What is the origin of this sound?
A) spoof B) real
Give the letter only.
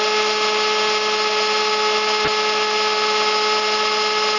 B